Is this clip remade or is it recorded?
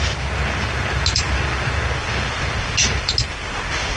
recorded